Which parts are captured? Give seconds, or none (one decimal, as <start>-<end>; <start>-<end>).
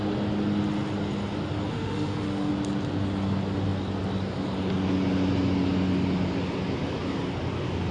0.0-1.7; 2.5-7.9